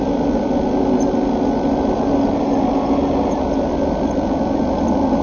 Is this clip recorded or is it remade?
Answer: recorded